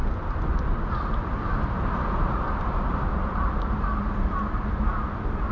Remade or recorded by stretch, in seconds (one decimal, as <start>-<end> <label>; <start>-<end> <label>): 0.0-5.5 recorded